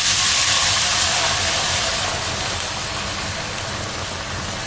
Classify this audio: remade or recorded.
recorded